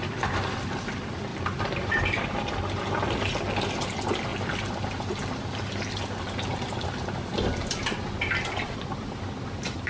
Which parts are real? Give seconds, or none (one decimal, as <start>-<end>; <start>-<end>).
0.0-1.3; 2.5-4.3; 5.5-9.9